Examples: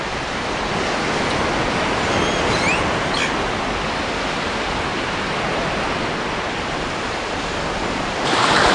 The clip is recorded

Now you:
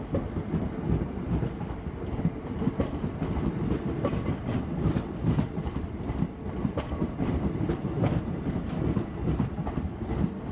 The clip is recorded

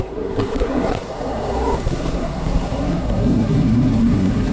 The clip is remade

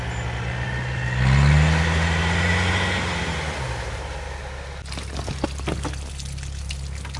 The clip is recorded